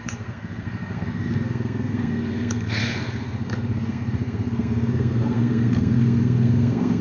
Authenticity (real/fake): fake